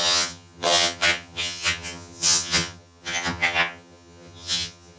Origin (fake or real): fake